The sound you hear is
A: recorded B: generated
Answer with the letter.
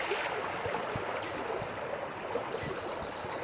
A